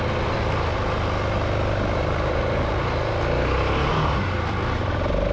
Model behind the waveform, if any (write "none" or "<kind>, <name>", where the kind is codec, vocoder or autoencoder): none